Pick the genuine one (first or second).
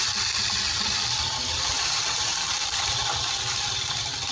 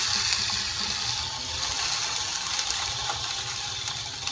second